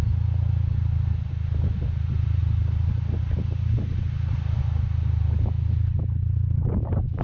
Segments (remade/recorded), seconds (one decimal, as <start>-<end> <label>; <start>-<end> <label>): 0.0-7.2 recorded